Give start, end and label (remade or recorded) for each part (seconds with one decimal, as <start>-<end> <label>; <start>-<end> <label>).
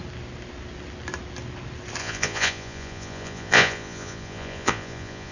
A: 0.0-2.0 recorded; 2.0-5.3 remade